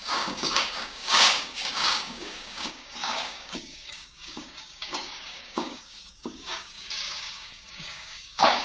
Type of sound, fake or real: fake